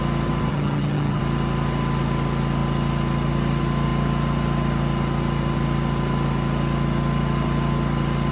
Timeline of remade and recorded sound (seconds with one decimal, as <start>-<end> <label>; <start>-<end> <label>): 0.0-0.5 recorded; 0.5-1.2 remade; 1.2-8.3 recorded